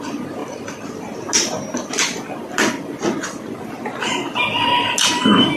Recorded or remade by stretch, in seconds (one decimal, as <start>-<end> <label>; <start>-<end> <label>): 0.0-5.6 recorded